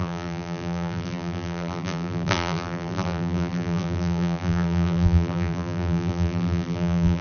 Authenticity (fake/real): fake